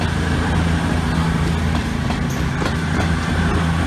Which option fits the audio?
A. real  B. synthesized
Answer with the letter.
A